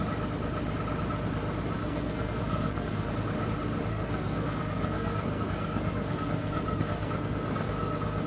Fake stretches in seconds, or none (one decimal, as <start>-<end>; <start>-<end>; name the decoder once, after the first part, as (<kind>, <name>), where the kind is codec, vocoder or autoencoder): 1.8-3.1 (codec, SNAC); 3.9-8.3